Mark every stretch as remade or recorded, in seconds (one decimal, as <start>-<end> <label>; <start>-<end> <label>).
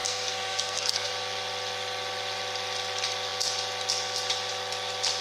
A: 0.0-1.1 remade; 1.1-5.2 recorded